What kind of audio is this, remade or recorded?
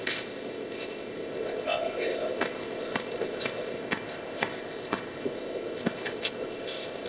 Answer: remade